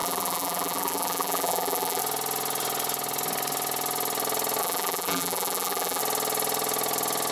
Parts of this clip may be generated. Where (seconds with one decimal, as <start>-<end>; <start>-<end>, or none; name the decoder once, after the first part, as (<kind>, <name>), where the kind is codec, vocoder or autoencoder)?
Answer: 0.0-2.0 (vocoder, BigVGAN v2); 4.6-6.0